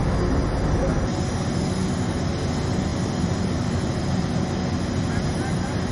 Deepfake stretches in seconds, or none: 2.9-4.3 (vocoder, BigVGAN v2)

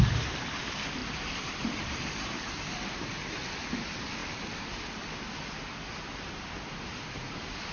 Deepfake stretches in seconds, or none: 1.0-2.7 (vocoder, BigVGAN v2)

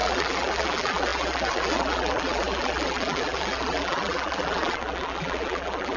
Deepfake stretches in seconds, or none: 0.0-6.0 (vocoder, BigVGAN v2)

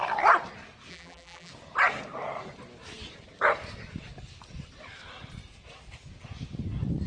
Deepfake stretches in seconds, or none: 0.9-1.5 (vocoder, BigVGAN v2)

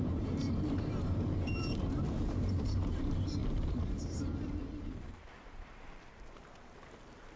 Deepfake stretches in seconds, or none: 0.0-7.4 (vocoder, BigVGAN v2)

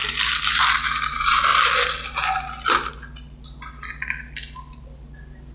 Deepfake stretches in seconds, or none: 0.6-5.5 (vocoder, BigVGAN v2)